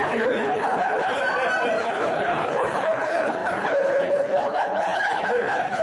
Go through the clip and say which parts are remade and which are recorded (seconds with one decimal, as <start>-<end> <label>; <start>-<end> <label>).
0.0-1.2 remade; 1.2-1.8 recorded; 1.8-5.8 remade